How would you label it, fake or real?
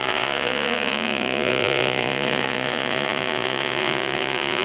fake